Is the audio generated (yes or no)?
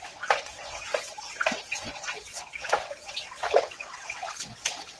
yes